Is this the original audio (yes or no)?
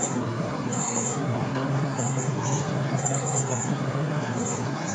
no